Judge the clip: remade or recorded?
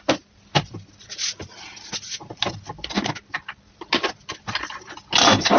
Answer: recorded